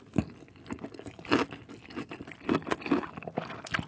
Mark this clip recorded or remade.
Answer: recorded